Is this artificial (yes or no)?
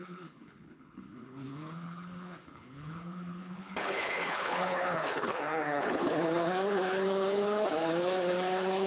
yes